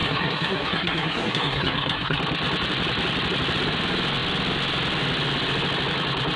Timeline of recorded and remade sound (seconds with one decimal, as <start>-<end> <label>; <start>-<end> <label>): 0.0-2.2 remade; 2.2-6.4 recorded